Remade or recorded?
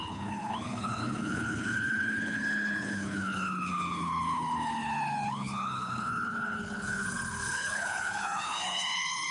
remade